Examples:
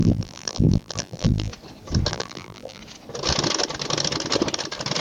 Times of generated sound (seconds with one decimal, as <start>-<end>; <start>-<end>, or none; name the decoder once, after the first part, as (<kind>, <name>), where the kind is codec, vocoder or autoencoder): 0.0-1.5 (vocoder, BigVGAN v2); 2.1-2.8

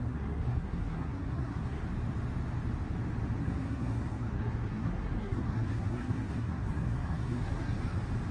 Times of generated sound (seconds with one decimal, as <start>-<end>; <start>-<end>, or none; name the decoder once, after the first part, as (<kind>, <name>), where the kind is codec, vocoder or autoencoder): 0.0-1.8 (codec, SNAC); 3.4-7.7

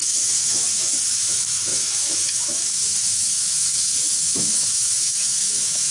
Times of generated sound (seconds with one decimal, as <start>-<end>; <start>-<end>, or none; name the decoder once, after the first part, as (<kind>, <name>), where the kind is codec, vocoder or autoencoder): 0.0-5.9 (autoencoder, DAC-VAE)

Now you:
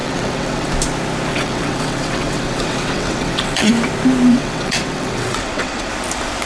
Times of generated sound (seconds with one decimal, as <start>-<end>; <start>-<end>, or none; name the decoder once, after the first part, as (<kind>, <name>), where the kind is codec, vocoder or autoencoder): 0.0-0.7 (vocoder, WaveNeXt); 1.3-3.7; 4.3-5.9